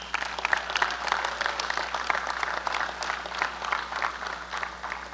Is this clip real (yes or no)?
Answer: yes